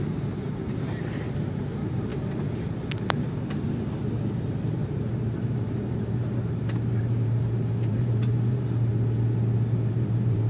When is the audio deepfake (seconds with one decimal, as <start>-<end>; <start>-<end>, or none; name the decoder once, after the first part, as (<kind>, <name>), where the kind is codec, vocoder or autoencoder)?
0.0-2.1 (vocoder, BigVGAN v2); 4.7-8.9; 9.9-10.5